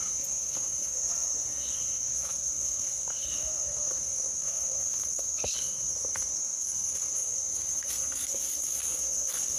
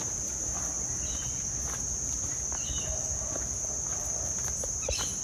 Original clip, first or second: second